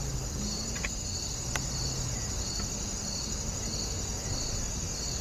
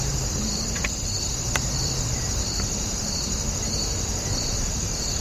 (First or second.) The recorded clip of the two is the first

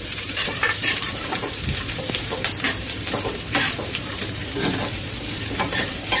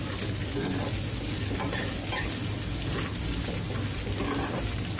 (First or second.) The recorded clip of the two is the second